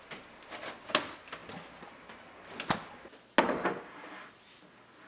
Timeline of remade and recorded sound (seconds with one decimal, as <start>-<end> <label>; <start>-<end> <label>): 0.0-5.1 recorded